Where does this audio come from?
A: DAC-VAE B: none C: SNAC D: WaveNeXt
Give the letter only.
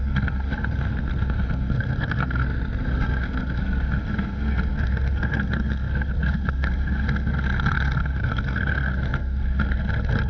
C